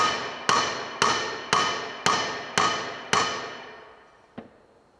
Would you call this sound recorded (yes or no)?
yes